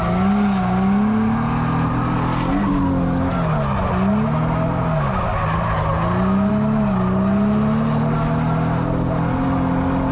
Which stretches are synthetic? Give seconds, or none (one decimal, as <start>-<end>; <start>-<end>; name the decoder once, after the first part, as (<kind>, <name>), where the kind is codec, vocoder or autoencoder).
none